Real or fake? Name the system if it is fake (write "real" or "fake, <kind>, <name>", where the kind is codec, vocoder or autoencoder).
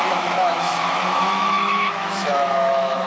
fake, autoencoder, DAC-VAE